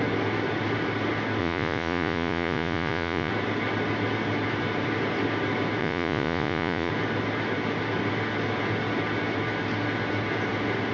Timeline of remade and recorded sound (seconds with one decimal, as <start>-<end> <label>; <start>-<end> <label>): 0.0-1.4 recorded; 1.4-3.3 remade; 3.3-5.8 recorded; 5.8-6.9 remade; 6.9-10.9 recorded